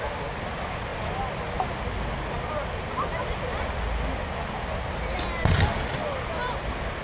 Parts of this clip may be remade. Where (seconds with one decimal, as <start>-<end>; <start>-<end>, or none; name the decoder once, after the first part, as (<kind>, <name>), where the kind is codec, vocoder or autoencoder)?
none